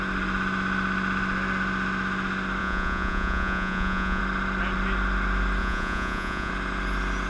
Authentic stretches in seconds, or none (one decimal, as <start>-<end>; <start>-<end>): 0.0-2.6; 4.2-5.6; 6.5-7.3